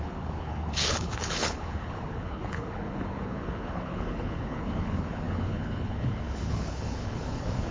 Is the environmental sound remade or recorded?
remade